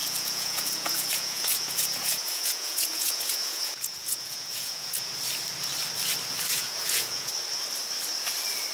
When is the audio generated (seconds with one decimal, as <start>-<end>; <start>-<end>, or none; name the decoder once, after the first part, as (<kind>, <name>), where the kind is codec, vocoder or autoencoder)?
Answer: 0.0-5.1 (vocoder, Vocos); 6.5-7.3